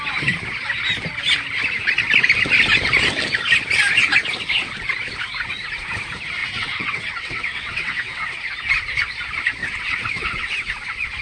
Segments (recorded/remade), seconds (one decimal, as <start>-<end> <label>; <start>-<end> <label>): 0.0-6.4 recorded; 6.4-8.4 remade; 8.4-9.6 recorded; 9.6-10.7 remade; 10.7-11.2 recorded